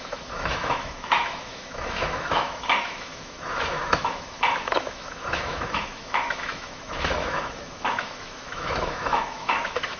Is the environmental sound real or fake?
fake